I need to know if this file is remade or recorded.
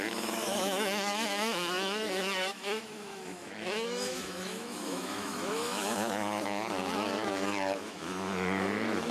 remade